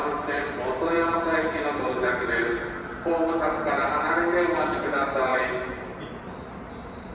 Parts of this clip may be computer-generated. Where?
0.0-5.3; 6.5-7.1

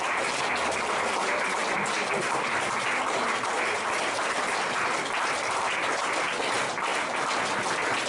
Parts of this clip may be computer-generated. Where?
none

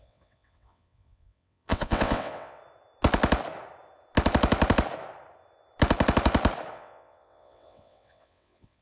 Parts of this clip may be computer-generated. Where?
0.0-2.6; 6.7-8.8